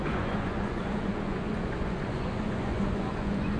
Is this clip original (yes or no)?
no